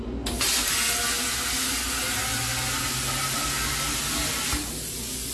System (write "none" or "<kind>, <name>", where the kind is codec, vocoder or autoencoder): none